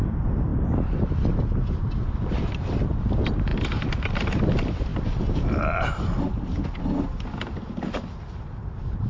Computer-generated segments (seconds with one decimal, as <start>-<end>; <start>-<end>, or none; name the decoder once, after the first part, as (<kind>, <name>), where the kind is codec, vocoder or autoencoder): none